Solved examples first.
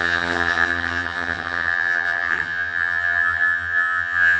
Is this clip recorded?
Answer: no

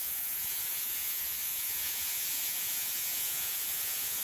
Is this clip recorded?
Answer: no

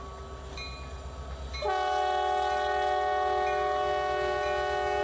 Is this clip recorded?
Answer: yes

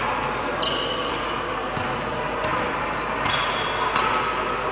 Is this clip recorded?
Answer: yes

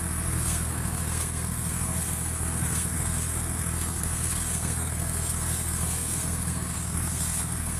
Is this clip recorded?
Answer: no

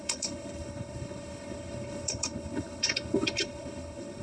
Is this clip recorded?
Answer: no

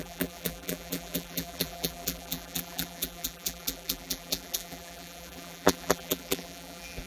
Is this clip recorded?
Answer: no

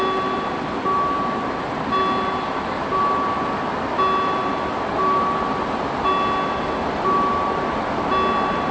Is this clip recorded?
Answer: yes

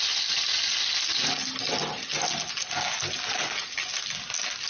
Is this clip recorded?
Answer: yes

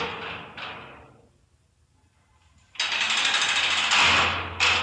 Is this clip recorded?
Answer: yes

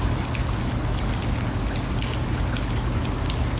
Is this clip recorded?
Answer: yes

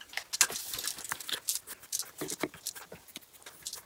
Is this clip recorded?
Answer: yes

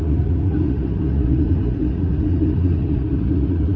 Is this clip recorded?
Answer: no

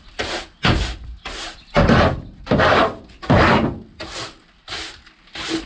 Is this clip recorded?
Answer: yes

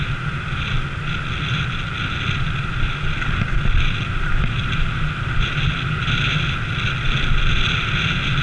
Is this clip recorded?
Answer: yes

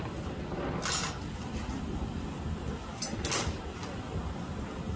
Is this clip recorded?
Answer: yes